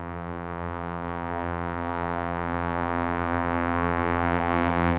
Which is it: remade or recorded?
remade